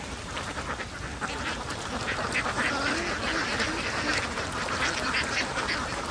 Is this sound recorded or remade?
recorded